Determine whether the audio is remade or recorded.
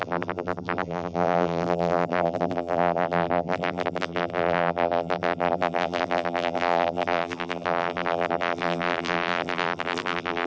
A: remade